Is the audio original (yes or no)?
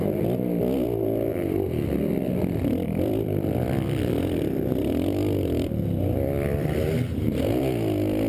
no